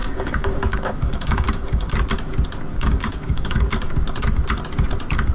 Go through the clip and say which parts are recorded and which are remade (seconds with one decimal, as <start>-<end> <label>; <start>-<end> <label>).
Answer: 0.0-1.9 remade; 1.9-2.7 recorded; 2.7-3.7 remade; 3.7-5.3 recorded